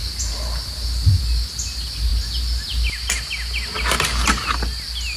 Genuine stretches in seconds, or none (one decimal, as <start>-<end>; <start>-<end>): 0.0-5.2